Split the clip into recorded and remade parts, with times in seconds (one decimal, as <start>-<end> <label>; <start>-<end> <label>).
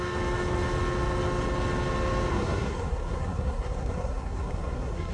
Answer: 0.0-2.3 recorded; 2.3-5.1 remade